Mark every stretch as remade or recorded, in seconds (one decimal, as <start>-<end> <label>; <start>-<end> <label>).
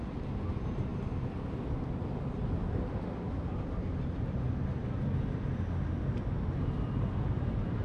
0.0-7.8 recorded